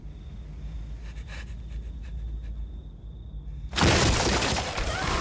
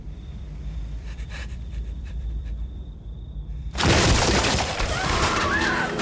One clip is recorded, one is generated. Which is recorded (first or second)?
first